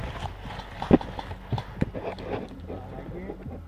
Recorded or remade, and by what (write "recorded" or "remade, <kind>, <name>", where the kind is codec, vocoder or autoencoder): recorded